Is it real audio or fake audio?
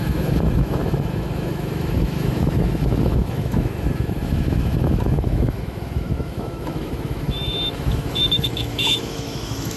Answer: fake